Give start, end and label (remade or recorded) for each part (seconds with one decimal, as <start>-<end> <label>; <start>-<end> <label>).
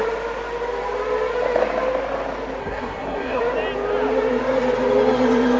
0.0-2.6 recorded; 2.6-3.4 remade; 3.4-5.6 recorded